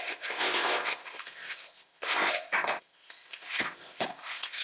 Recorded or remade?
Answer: remade